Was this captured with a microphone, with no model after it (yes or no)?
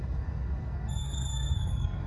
no